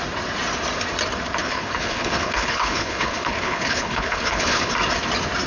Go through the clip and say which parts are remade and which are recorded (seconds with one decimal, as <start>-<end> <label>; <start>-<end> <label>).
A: 0.0-1.4 recorded; 1.4-4.7 remade; 4.7-5.5 recorded